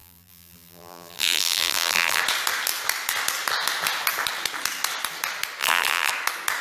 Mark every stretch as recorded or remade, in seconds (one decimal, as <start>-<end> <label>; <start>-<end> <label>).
0.0-2.2 remade; 2.2-5.6 recorded; 5.6-6.1 remade; 6.1-6.6 recorded